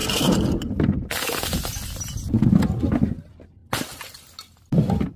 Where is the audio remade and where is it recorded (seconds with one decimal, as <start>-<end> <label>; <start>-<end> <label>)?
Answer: 0.0-5.2 recorded